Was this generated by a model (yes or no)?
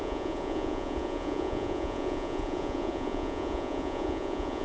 yes